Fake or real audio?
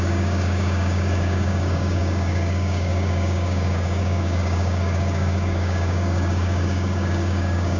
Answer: fake